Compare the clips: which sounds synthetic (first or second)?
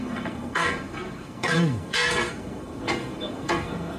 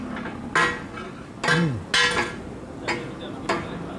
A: first